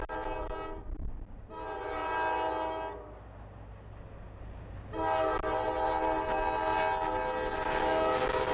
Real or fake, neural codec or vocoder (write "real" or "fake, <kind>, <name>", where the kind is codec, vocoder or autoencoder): real